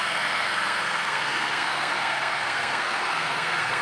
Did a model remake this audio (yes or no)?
yes